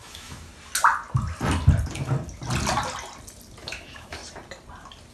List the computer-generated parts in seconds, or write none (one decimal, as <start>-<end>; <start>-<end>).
0.0-0.5; 3.6-4.2